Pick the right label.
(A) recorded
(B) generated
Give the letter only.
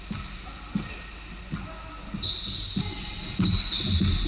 A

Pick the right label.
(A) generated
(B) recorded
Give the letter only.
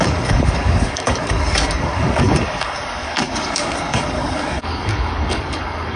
A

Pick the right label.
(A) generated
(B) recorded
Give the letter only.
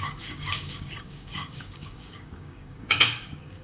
A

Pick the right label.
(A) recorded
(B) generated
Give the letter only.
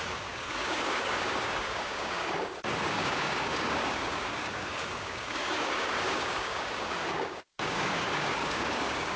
B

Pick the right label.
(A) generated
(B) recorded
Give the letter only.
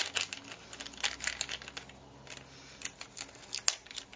B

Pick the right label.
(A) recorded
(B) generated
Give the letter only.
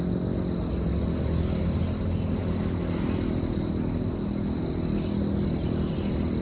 A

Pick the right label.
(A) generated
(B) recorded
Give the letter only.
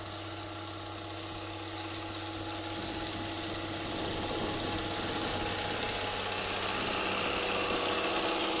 B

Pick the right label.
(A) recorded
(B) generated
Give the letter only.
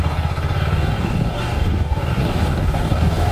B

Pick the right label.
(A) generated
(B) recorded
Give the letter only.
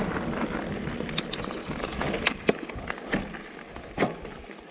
B